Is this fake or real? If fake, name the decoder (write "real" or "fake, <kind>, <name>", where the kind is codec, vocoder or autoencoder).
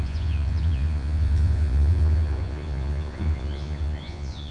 fake, vocoder, Vocos